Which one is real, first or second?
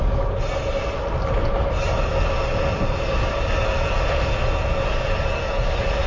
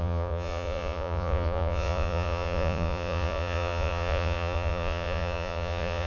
first